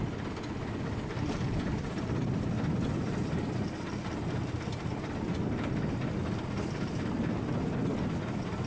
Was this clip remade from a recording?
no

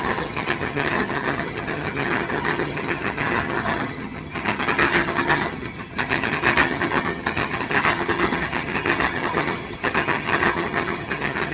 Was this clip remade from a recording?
yes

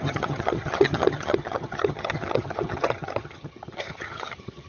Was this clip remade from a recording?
yes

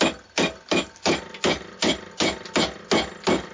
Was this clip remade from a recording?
no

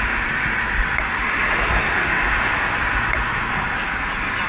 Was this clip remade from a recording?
no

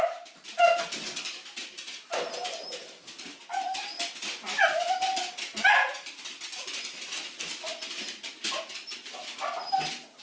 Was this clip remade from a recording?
no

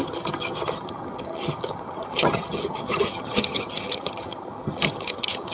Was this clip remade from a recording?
yes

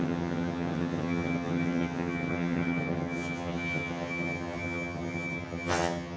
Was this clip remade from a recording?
yes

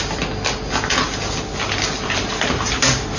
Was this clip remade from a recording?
no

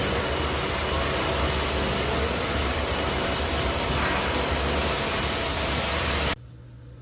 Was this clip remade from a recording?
no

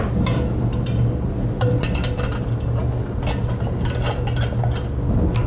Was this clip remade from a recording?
no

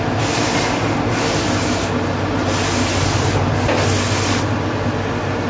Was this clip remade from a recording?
no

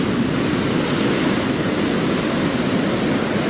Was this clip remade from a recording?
no